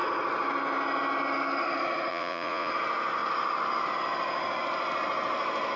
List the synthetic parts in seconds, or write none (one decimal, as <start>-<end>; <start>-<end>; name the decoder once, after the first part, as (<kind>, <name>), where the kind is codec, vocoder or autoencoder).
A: 2.1-2.7 (vocoder, Vocos)